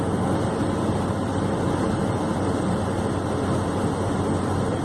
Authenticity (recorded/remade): recorded